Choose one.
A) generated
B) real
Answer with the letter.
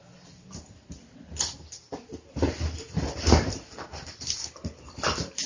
A